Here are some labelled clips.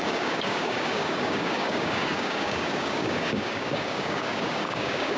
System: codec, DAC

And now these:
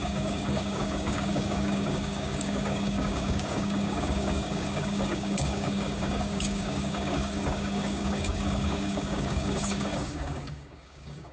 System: codec, DAC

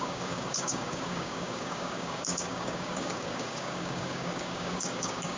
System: codec, DAC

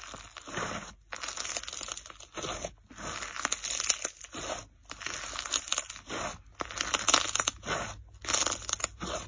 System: none